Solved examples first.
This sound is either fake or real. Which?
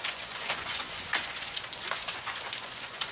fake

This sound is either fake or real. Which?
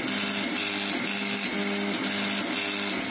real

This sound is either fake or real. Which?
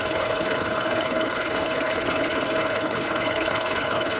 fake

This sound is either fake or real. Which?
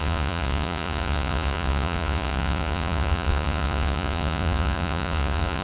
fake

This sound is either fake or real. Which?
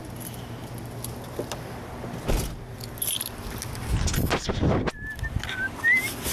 real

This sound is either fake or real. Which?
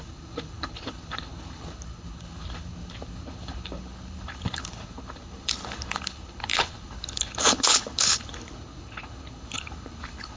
fake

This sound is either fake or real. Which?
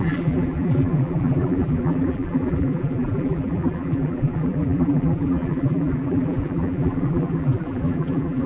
fake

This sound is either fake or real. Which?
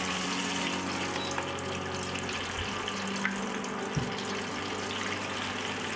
real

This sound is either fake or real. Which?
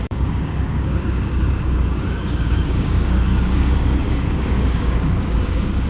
fake